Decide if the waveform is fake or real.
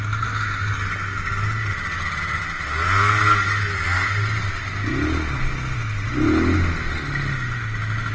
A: real